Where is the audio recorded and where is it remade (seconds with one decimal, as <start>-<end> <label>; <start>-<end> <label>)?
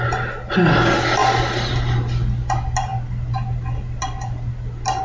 0.0-5.0 recorded